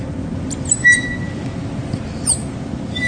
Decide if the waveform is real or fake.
real